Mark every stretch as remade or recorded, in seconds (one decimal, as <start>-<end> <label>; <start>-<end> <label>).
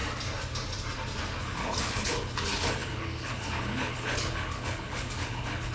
0.0-1.4 recorded; 1.4-5.7 remade